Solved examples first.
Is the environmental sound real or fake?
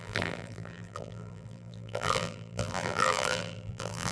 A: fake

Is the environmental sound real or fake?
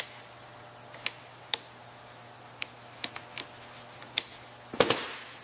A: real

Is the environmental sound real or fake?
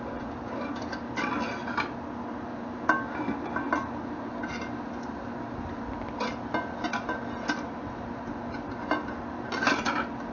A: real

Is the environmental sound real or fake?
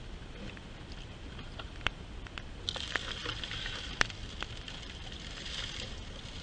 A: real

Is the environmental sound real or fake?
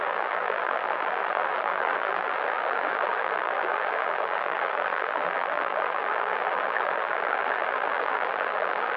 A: fake